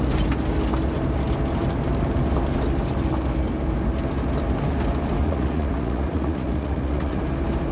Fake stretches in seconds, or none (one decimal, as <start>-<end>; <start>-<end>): 5.2-7.2